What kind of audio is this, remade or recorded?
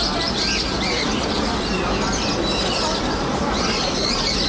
recorded